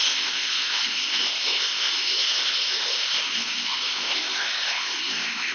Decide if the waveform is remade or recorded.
remade